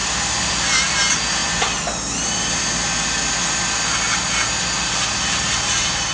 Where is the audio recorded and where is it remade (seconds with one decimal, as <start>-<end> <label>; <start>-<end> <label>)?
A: 0.0-6.1 recorded